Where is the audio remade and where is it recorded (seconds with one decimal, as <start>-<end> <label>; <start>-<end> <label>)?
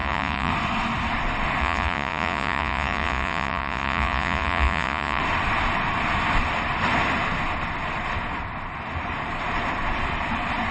0.0-0.5 remade; 0.5-1.6 recorded; 1.6-5.2 remade; 5.2-10.7 recorded